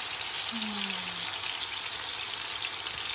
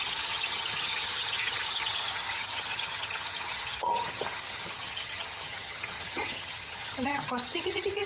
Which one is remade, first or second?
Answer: second